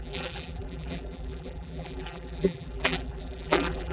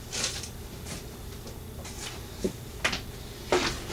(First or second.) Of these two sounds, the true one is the second